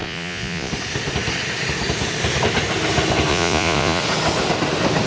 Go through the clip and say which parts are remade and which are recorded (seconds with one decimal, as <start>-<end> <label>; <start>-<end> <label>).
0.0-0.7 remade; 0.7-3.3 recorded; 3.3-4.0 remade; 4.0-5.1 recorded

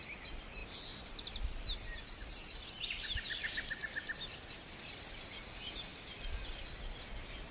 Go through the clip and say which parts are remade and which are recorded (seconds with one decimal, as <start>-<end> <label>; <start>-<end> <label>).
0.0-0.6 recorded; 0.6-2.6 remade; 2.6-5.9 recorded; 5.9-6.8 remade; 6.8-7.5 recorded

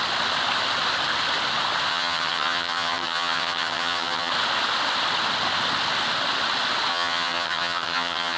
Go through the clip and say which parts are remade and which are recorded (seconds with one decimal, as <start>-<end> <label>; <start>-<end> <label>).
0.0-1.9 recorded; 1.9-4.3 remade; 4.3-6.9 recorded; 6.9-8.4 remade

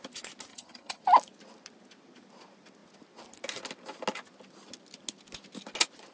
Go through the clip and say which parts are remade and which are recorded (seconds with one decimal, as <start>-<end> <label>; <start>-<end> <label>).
0.0-0.5 recorded; 0.5-1.0 remade; 1.0-6.1 recorded